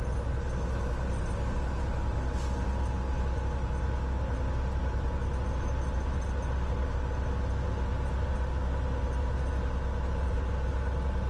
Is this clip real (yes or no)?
yes